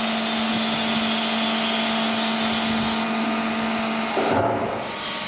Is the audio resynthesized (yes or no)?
no